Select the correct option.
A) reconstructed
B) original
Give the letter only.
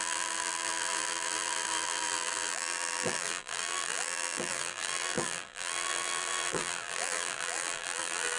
A